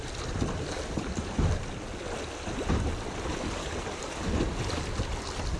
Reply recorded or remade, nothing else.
recorded